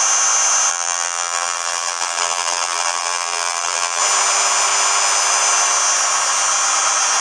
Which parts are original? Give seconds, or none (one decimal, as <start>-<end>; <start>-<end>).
0.0-0.7; 4.0-7.2